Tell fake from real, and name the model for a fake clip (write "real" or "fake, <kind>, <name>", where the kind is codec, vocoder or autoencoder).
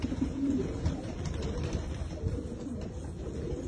fake, vocoder, BigVGAN v2